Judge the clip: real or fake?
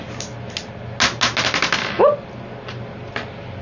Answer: real